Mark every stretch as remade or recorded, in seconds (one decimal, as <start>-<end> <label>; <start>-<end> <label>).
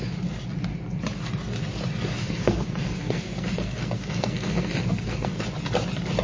0.0-2.2 recorded; 2.2-5.4 remade; 5.4-6.2 recorded